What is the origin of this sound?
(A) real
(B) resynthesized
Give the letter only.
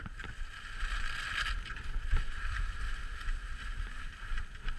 A